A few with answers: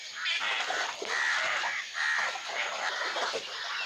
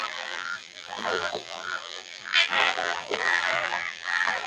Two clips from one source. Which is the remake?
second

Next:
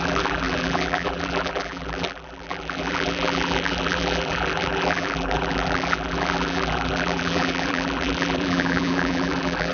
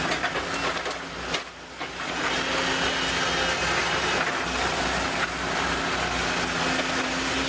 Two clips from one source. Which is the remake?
first